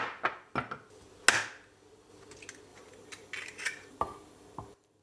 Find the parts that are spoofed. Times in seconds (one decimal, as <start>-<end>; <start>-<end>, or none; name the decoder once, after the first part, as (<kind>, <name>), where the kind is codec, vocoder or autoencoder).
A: 2.7-5.0 (vocoder, BigVGAN v2)

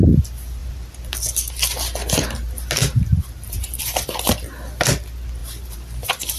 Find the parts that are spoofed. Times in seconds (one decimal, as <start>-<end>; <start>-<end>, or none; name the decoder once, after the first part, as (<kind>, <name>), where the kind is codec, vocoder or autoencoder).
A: 0.6-1.1 (vocoder, BigVGAN v2); 2.8-3.8; 5.4-6.4

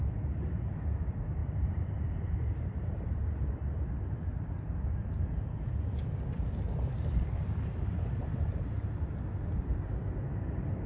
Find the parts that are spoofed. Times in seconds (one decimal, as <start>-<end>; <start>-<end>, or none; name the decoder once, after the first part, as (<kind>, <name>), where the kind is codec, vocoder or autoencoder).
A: 1.4-3.2 (vocoder, BigVGAN v2); 7.4-8.1

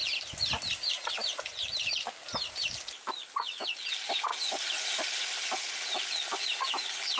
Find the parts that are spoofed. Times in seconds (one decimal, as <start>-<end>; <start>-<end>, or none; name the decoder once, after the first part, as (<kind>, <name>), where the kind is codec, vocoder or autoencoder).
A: none

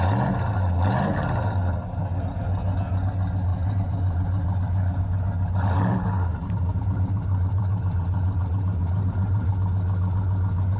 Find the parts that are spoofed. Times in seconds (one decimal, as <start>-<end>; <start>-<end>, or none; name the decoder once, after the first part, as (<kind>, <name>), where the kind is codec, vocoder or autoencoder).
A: 3.5-5.0 (vocoder, BigVGAN v2); 6.3-9.5

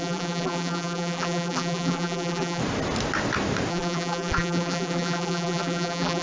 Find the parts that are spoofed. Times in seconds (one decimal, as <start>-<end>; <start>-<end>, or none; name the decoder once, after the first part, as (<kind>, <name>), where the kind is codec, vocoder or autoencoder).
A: 0.0-2.6 (vocoder, BigVGAN v2); 3.7-6.2

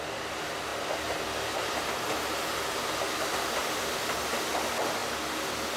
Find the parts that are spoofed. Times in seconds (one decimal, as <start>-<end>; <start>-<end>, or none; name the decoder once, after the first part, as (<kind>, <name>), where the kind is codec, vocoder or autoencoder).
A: 0.0-0.7 (vocoder, BigVGAN v2); 3.2-5.0

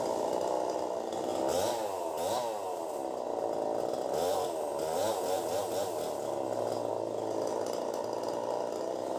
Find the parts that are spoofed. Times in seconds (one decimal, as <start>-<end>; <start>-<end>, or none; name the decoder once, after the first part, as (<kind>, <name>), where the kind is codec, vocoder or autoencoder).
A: none